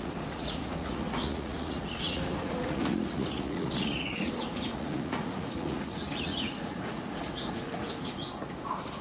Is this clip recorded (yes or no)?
no